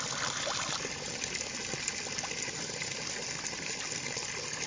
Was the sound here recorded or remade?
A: remade